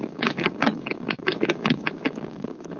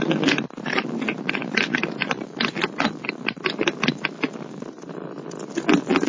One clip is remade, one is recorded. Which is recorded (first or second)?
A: second